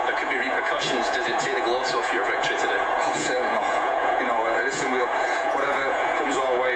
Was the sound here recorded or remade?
remade